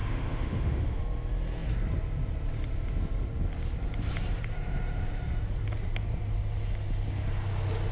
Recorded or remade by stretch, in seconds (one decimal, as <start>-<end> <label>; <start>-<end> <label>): 0.0-1.0 remade; 1.0-7.9 recorded